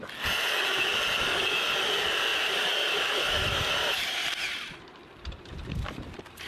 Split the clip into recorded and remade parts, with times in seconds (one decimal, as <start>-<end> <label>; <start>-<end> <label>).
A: 0.0-2.3 recorded; 2.3-6.5 remade